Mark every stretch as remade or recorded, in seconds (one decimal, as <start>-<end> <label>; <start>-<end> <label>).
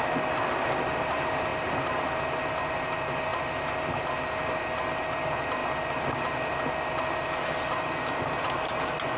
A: 0.0-3.3 recorded; 3.3-4.4 remade; 4.4-9.2 recorded